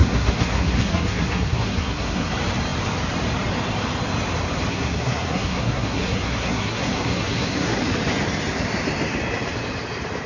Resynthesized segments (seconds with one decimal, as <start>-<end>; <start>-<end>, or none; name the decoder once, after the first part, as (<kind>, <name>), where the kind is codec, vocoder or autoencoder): 0.0-2.3 (codec, SNAC); 4.7-7.8